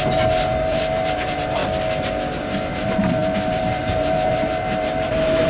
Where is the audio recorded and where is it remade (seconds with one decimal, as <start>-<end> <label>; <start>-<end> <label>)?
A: 0.0-1.6 remade; 1.6-2.7 recorded; 2.7-5.5 remade